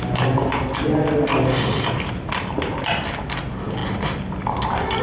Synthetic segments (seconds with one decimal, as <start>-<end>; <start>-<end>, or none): none